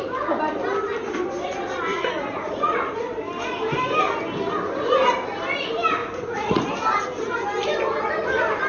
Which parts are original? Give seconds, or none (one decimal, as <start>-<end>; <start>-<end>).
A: 0.0-1.9; 3.1-6.0; 6.6-8.7